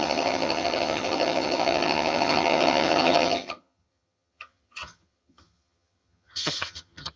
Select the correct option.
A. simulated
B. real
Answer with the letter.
A